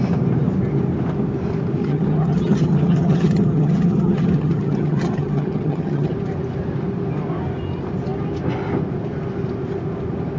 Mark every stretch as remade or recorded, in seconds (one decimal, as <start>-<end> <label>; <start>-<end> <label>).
0.0-1.8 recorded; 1.8-6.1 remade; 6.1-10.4 recorded